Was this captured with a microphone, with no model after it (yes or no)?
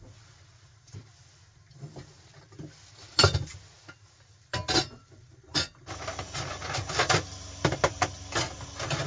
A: yes